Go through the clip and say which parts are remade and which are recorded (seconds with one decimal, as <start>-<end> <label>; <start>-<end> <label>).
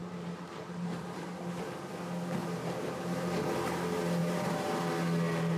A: 0.0-1.9 remade; 1.9-2.4 recorded; 2.4-3.4 remade; 3.4-4.2 recorded; 4.2-4.9 remade; 4.9-5.6 recorded